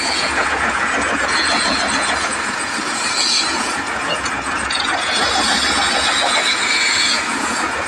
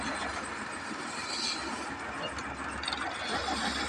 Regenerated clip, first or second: first